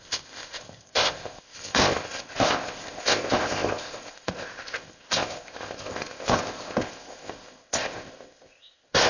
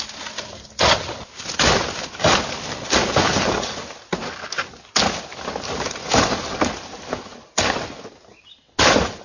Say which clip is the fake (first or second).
first